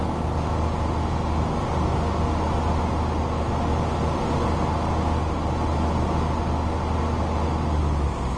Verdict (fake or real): real